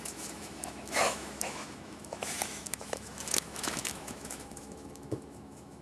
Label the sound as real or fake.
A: fake